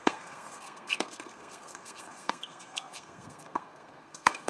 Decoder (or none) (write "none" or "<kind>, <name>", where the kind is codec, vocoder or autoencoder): codec, SNAC